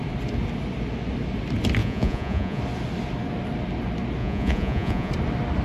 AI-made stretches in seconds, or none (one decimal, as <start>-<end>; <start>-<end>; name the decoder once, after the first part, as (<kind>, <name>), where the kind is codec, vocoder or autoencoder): 1.8-2.6 (vocoder, Vocos); 4.2-5.1